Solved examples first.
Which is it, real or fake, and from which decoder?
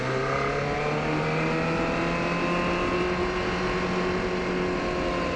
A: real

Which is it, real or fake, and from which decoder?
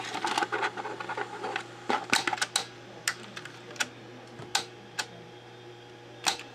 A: real